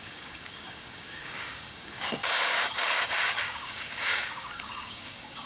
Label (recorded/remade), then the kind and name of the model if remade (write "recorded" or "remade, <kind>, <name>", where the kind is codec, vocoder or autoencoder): remade, codec, DAC